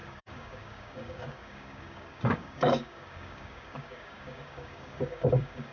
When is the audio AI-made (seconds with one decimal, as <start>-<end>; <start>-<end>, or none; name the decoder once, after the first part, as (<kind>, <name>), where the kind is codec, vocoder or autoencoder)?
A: 0.0-5.7 (codec, DAC)